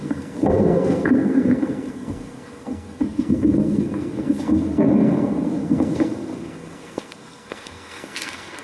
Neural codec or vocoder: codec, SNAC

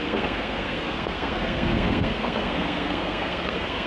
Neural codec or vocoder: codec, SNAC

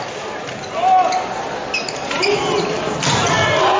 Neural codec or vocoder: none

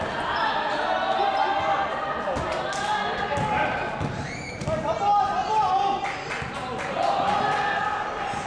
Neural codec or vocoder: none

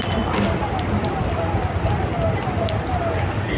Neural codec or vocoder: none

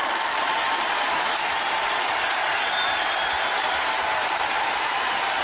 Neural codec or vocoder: vocoder, BigVGAN v2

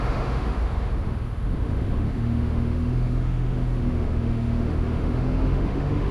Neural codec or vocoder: autoencoder, DAC-VAE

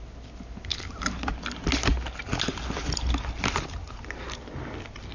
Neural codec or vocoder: none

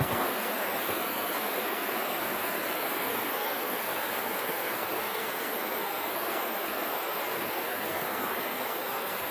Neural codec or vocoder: codec, SNAC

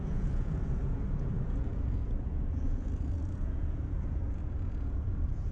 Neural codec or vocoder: vocoder, Vocos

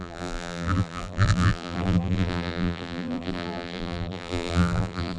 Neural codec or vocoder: vocoder, BigVGAN v2